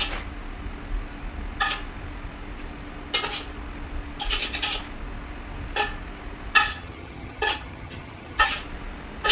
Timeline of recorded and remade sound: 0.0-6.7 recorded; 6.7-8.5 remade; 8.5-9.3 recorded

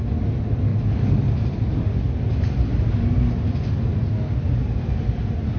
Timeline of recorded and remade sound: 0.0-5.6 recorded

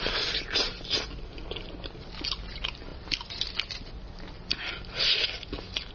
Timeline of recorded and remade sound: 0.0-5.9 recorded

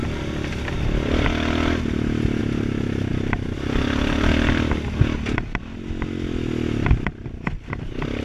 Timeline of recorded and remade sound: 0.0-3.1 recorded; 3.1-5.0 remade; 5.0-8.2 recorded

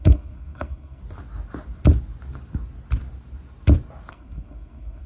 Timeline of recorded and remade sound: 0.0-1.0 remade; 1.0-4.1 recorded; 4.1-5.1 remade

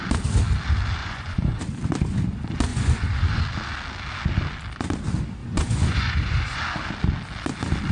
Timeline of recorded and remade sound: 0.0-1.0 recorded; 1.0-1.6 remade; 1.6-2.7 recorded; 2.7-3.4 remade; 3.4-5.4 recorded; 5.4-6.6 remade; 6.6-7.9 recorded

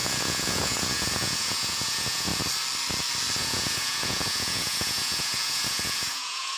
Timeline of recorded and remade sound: 0.0-2.3 remade; 2.3-3.4 recorded; 3.4-6.6 remade